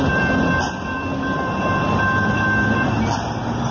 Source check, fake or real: fake